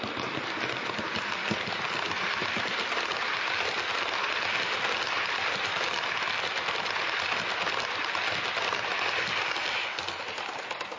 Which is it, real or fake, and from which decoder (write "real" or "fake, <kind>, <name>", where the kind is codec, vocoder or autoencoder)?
real